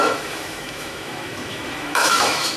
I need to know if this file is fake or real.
fake